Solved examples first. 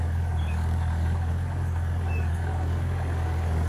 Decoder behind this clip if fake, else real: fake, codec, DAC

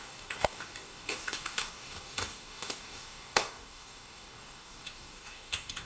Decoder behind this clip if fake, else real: fake, codec, DAC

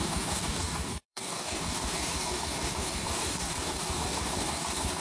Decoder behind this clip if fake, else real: fake, codec, DAC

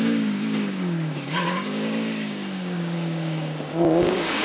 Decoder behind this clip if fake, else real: fake, codec, DAC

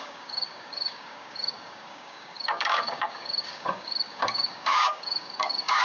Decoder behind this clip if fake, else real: fake, codec, DAC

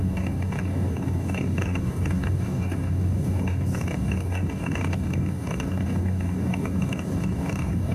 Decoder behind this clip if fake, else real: fake, codec, DAC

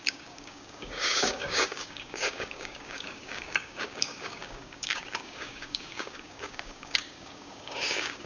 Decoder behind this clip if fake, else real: fake, codec, DAC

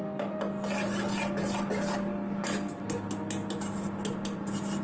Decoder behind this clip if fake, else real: real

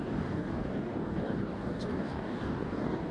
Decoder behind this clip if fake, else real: fake, codec, DAC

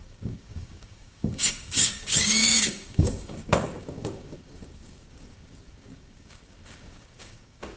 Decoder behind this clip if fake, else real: fake, codec, DAC